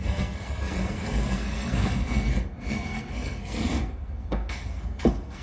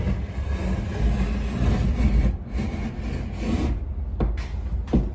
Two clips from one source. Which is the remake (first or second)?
first